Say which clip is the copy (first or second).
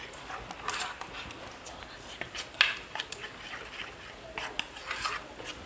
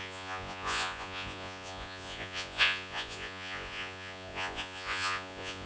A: second